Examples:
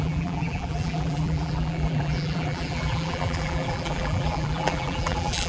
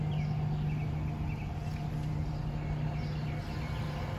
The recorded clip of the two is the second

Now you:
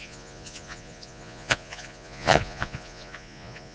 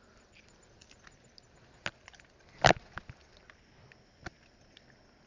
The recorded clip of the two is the second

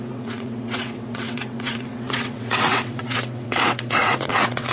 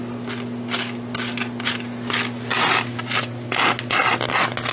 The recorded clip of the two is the second